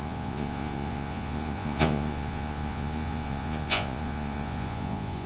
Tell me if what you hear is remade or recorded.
remade